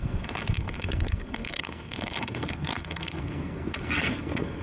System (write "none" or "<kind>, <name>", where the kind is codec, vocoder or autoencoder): codec, SNAC